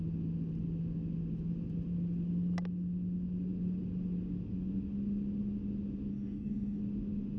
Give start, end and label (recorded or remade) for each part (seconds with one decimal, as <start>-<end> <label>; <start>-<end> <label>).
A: 0.0-6.1 recorded; 6.1-6.8 remade; 6.8-7.4 recorded